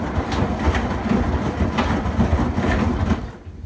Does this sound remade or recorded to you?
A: recorded